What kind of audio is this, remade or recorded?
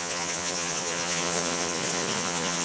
remade